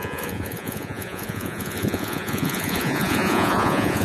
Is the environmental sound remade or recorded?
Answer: remade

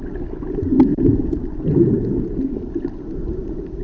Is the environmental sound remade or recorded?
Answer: recorded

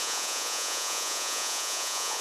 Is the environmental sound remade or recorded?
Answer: remade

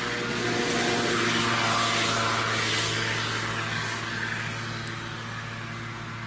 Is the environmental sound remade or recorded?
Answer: recorded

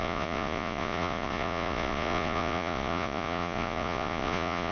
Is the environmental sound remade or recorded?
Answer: remade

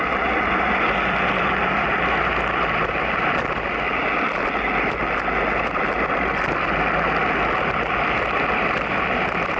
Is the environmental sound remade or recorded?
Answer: recorded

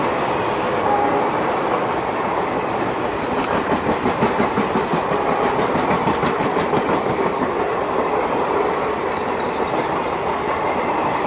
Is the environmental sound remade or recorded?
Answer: recorded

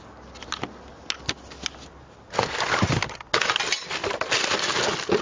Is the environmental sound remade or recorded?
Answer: recorded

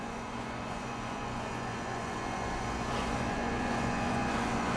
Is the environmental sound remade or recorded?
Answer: remade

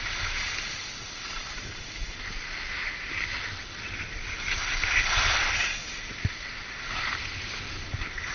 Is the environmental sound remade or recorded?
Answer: recorded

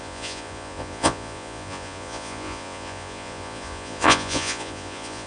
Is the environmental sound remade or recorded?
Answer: remade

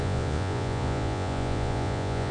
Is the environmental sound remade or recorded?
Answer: remade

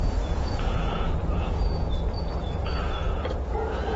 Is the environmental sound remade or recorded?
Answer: remade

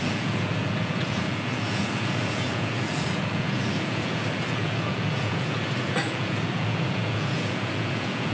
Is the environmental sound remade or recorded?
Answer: remade